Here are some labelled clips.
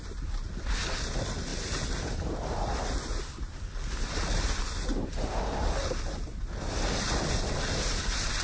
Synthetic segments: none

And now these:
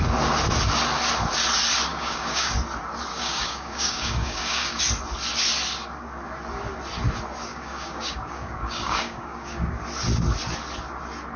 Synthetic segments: 1.9-2.5 (codec, DAC); 3.1-4.8; 7.5-9.7

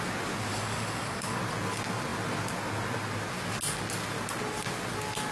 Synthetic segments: 0.5-1.4 (codec, DAC)